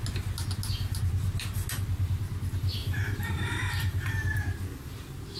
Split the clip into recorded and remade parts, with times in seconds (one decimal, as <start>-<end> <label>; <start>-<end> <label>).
0.0-2.8 recorded; 2.8-4.1 remade; 4.1-5.4 recorded